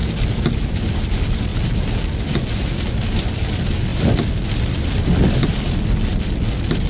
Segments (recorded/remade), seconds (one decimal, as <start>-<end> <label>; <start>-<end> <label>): 0.0-3.9 remade; 3.9-4.9 recorded; 4.9-6.9 remade

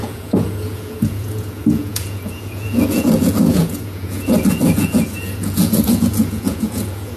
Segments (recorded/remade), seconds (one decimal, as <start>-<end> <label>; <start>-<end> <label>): 0.0-7.2 remade

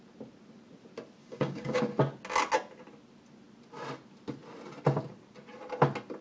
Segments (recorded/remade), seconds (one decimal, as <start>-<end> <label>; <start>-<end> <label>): 0.0-1.2 recorded; 1.2-1.8 remade; 1.8-6.2 recorded